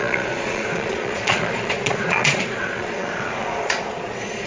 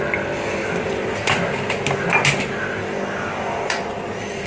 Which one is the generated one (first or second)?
first